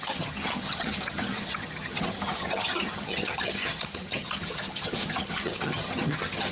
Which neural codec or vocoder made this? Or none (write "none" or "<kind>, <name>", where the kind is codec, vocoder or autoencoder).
vocoder, HiFi-GAN